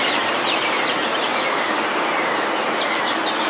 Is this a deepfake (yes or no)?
yes